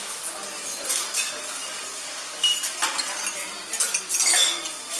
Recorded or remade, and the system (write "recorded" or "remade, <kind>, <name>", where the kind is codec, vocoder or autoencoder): recorded